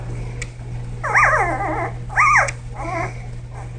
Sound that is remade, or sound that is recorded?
recorded